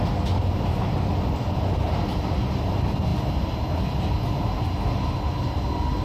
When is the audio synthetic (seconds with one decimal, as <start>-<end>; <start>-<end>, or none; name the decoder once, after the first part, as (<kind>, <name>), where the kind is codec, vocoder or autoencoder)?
none